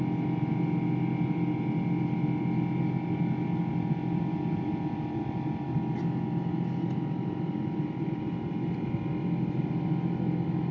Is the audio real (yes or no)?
yes